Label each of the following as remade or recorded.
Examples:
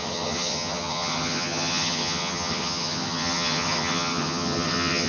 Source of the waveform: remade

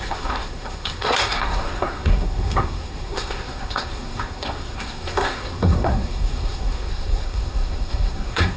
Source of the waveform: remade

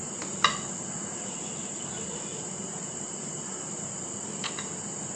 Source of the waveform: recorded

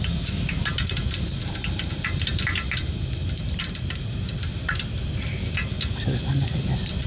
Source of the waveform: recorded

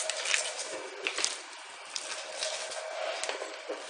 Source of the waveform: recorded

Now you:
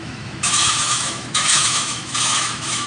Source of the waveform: remade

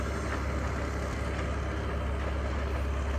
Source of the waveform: recorded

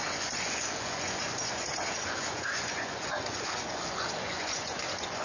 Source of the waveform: remade